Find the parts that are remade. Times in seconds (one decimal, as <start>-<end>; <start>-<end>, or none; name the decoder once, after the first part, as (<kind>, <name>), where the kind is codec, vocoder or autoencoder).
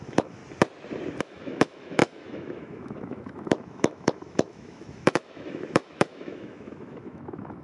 0.0-0.4 (autoencoder, DAC-VAE); 1.2-7.6